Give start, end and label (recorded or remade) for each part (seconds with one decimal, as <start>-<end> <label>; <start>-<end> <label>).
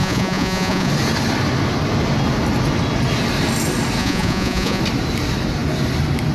0.0-0.9 remade; 0.9-4.0 recorded; 4.0-4.8 remade; 4.8-6.3 recorded